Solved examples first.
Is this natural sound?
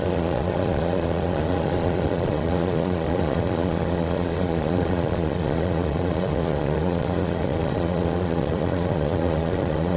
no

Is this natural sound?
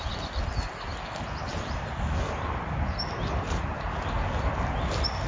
yes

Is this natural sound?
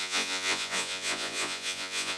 no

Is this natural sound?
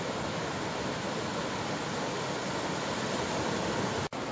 yes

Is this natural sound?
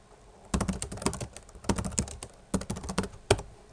yes